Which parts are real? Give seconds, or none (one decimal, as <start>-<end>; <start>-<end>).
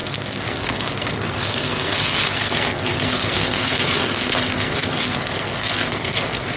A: none